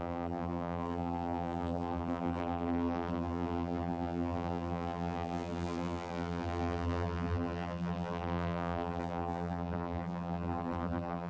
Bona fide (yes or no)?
no